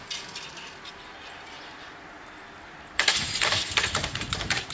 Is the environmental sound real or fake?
fake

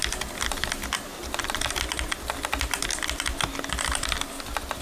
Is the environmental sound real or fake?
real